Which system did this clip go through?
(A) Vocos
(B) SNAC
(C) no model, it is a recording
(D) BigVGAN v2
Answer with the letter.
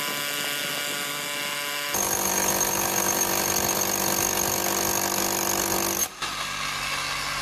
C